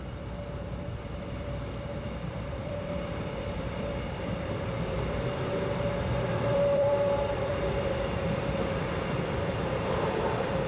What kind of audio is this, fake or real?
fake